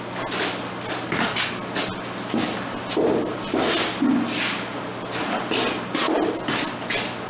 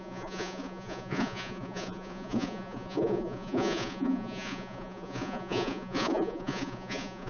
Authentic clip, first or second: first